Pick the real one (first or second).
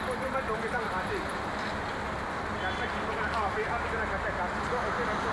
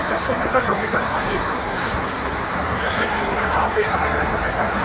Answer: first